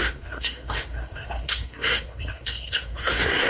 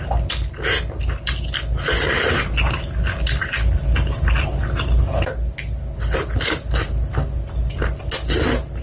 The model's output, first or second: first